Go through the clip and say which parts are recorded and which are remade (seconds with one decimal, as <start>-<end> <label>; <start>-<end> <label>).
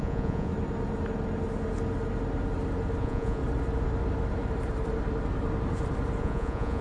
0.0-0.5 remade; 0.5-3.0 recorded; 3.0-3.4 remade; 3.4-6.2 recorded; 6.2-6.8 remade